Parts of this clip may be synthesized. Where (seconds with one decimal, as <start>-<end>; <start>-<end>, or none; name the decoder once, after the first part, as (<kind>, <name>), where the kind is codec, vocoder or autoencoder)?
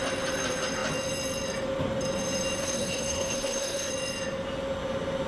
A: 2.6-3.9 (codec, SNAC)